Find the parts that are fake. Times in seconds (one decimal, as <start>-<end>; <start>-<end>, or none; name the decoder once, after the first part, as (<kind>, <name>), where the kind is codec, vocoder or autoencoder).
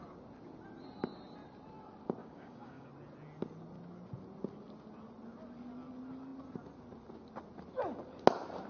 2.2-2.9 (codec, DAC)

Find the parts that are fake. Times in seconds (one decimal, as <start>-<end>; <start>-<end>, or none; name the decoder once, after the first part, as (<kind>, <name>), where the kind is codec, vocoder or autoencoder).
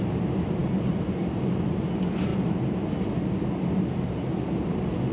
none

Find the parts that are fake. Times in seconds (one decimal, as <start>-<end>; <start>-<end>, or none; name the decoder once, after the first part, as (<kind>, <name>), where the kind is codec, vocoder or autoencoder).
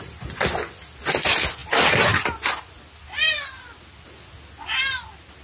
none